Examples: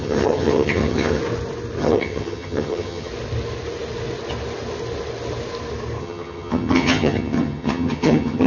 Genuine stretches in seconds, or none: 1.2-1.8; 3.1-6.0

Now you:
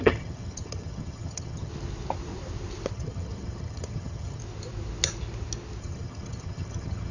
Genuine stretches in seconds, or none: 1.7-2.9; 4.4-5.8

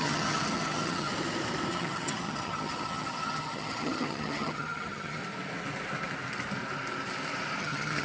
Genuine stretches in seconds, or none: 1.1-1.7; 5.2-7.6

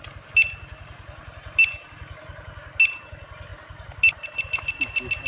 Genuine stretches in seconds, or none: 0.0-5.3

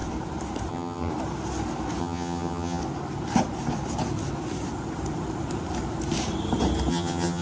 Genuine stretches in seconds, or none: 0.0-0.7; 1.1-2.0; 2.8-6.9